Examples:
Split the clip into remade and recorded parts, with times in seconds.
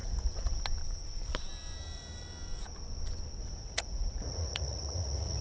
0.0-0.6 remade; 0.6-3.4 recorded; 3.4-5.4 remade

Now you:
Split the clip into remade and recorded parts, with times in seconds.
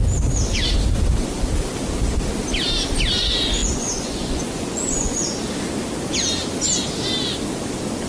0.0-3.6 recorded; 3.6-5.5 remade; 5.5-8.1 recorded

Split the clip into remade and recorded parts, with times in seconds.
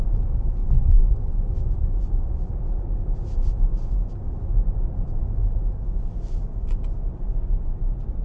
0.0-0.6 recorded; 0.6-2.1 remade; 2.1-8.2 recorded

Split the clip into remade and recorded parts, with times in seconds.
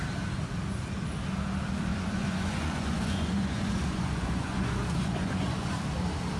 0.0-1.9 recorded; 1.9-5.7 remade; 5.7-6.4 recorded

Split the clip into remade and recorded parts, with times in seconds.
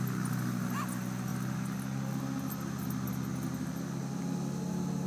0.0-5.1 recorded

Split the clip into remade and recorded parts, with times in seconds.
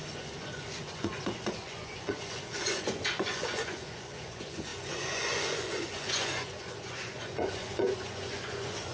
0.0-8.9 remade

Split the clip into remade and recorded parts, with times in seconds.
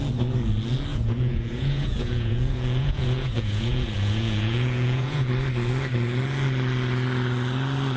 0.0-0.9 recorded; 0.9-5.3 remade; 5.3-8.0 recorded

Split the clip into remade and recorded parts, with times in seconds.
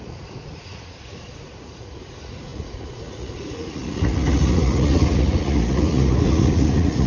0.0-7.1 remade